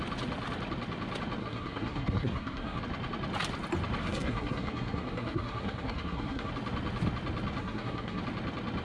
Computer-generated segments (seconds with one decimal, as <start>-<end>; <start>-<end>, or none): 1.4-2.8; 4.0-6.5; 7.6-8.2